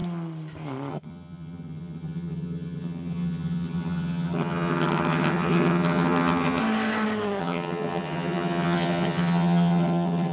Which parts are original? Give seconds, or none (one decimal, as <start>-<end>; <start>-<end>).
0.0-0.9; 6.6-7.4